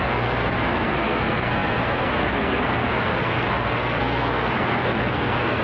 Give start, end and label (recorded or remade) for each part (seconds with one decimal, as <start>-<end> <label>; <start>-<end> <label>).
0.0-5.6 remade